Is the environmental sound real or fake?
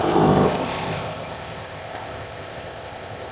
fake